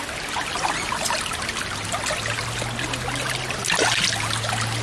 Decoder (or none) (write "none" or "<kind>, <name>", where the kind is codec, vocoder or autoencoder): none